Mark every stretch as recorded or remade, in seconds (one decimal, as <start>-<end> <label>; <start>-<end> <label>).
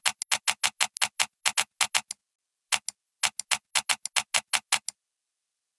0.0-5.8 recorded